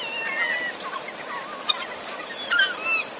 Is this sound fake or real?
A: real